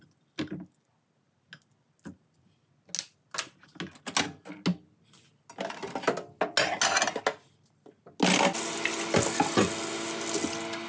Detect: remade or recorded recorded